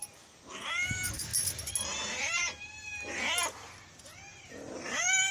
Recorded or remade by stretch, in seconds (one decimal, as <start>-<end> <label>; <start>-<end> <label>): 0.0-5.3 recorded

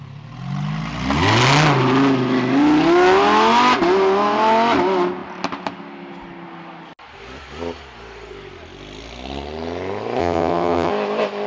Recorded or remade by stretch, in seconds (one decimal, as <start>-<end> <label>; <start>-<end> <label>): 0.0-10.2 recorded; 10.2-10.9 remade; 10.9-11.5 recorded